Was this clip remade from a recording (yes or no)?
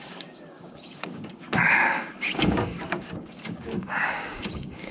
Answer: yes